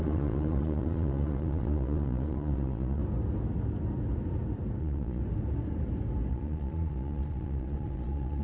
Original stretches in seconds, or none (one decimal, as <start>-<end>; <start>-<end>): 3.0-4.8; 5.2-6.3